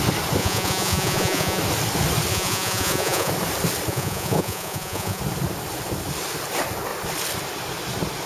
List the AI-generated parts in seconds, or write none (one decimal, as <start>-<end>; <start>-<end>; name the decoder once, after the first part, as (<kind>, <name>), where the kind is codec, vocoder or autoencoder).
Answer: 0.4-1.6 (vocoder, Vocos); 2.3-3.3; 3.9-5.2